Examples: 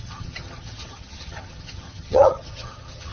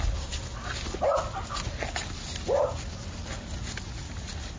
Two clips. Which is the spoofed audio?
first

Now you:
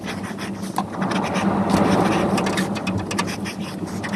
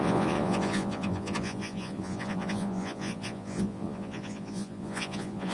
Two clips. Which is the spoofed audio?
second